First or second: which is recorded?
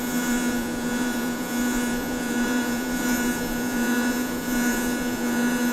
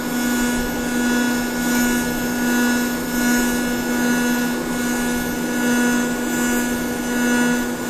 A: second